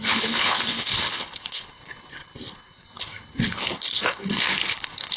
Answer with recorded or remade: remade